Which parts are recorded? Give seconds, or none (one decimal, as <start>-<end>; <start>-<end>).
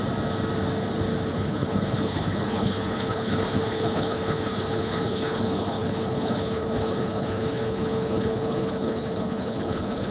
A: 0.0-1.3